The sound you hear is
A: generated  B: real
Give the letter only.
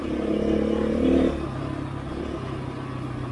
B